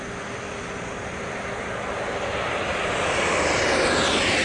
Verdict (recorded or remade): recorded